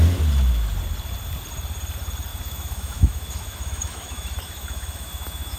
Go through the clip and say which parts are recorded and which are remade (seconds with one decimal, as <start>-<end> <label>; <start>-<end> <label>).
0.0-2.3 recorded; 2.3-5.6 remade